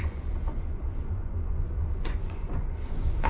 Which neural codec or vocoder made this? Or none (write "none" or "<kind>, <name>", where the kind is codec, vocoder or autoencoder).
vocoder, Vocos